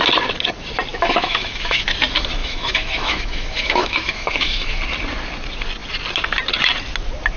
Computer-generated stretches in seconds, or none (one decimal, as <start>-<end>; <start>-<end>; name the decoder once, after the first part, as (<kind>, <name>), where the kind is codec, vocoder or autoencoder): 0.9-1.9 (autoencoder, DAC-VAE); 2.4-4.8